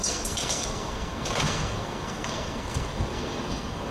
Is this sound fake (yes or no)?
yes